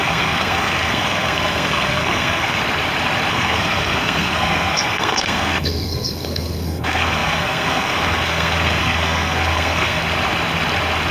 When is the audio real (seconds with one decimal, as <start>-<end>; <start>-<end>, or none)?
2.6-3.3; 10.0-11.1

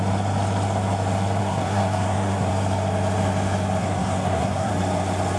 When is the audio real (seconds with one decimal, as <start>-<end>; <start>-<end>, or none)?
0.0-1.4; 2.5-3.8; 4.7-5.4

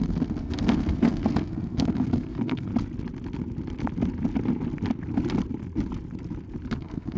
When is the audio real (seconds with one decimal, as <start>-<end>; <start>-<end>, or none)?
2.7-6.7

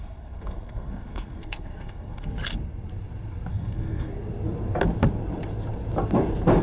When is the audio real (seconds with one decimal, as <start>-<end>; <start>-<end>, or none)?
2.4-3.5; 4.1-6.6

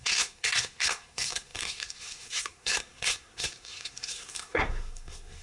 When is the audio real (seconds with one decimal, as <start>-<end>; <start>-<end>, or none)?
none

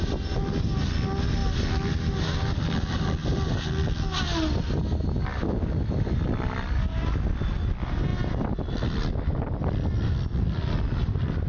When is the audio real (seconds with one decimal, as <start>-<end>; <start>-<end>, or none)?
0.0-11.5

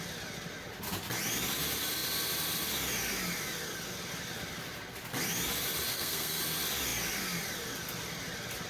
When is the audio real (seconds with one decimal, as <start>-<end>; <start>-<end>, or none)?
0.0-5.9; 6.4-8.7

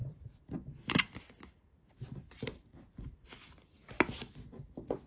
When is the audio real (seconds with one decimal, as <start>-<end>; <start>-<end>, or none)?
0.0-5.1